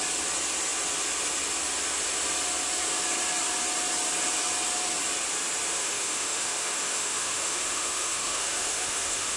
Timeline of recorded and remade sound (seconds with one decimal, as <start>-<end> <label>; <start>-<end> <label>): 0.0-5.8 recorded; 5.8-9.4 remade

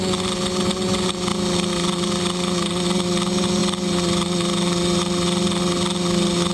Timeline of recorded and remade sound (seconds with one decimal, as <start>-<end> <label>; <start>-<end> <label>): 0.0-6.5 recorded